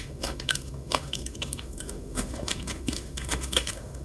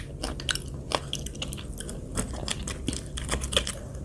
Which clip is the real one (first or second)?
second